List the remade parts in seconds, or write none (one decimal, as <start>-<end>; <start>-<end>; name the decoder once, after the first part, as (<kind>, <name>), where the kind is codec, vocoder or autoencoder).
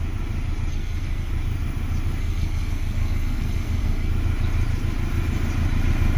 0.7-1.3 (codec, SNAC); 2.2-4.1